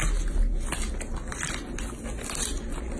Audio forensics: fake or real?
real